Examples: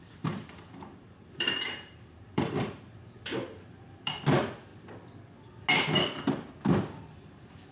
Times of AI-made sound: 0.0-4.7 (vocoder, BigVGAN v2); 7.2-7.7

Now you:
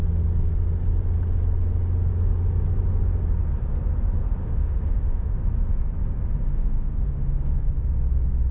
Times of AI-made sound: 4.4-5.3 (autoencoder, DAC-VAE); 6.5-7.6

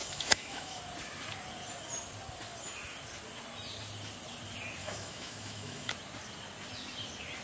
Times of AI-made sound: 0.0-0.8 (autoencoder, DAC-VAE); 4.8-5.9

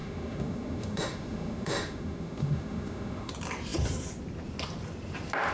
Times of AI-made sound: 0.0-3.3 (autoencoder, DAC-VAE)

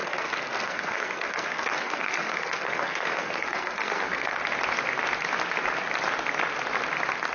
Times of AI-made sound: 0.0-4.4 (codec, SNAC)

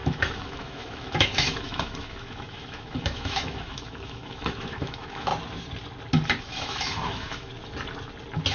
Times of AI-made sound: 0.0-5.3 (autoencoder, DAC-VAE); 6.4-7.5

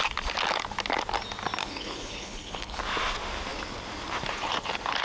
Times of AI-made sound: 1.6-2.8 (codec, HILCodec)